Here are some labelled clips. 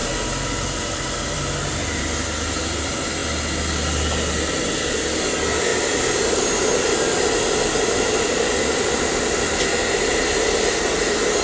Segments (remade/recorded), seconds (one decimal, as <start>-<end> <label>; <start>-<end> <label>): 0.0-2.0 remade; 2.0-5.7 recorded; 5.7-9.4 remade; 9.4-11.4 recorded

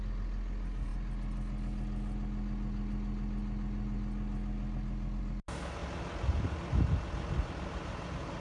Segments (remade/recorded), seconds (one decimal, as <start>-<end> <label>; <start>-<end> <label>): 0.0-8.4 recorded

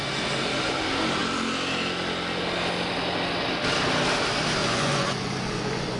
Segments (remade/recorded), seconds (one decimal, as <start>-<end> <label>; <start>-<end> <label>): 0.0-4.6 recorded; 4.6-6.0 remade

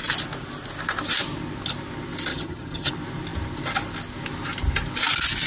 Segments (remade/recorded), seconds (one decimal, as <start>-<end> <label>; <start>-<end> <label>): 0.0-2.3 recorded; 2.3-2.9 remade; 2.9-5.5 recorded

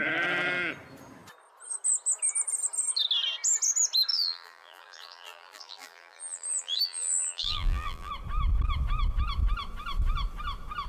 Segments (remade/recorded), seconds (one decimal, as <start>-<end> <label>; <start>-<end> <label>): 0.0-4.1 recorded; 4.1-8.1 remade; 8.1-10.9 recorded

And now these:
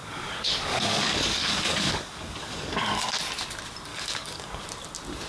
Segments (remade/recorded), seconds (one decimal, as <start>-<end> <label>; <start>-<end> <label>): 0.0-3.2 remade; 3.2-3.9 recorded; 3.9-4.6 remade; 4.6-5.3 recorded